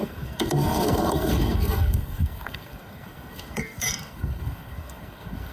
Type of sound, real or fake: fake